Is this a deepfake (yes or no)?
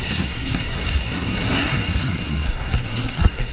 yes